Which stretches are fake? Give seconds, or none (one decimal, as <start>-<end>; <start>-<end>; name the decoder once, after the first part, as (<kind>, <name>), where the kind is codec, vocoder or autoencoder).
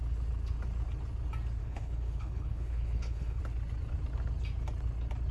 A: 1.6-3.4 (codec, HILCodec)